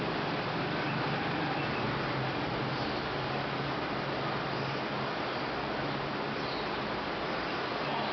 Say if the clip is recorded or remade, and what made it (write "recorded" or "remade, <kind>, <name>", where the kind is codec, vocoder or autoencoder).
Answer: recorded